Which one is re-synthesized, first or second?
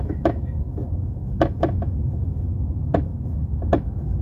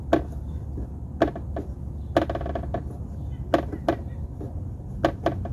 first